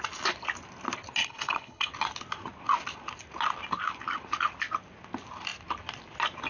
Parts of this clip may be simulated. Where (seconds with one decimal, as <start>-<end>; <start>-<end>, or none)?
1.2-1.9